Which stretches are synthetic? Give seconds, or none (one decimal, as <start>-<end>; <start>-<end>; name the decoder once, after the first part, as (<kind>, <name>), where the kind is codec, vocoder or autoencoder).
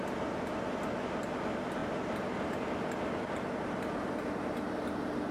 none